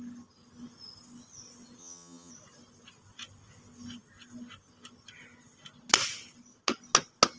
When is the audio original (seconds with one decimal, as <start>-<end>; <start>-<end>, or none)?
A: 0.0-1.8; 2.3-7.4